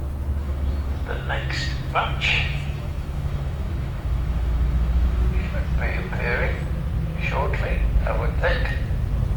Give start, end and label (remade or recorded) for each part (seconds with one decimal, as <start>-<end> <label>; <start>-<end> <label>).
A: 0.0-0.4 recorded; 0.4-5.2 remade; 5.2-9.4 recorded